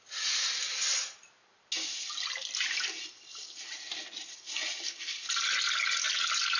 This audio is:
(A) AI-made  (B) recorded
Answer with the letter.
B